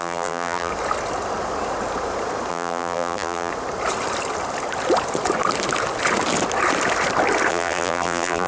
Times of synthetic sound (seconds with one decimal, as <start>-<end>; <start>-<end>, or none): 0.0-0.7; 2.5-3.5; 7.5-8.5